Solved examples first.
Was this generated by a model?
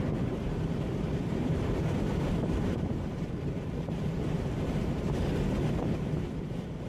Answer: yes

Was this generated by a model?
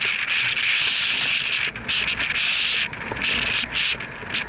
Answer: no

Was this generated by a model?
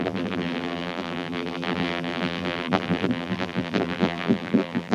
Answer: yes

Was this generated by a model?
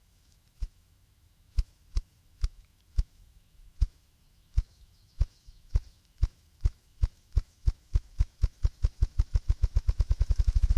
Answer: yes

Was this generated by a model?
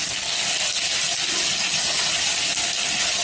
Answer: no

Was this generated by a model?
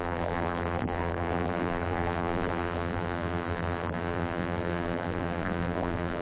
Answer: yes